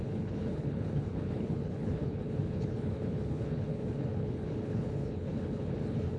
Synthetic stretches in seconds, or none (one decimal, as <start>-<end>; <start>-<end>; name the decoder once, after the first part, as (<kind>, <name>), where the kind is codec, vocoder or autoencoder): 0.0-6.2 (codec, HILCodec)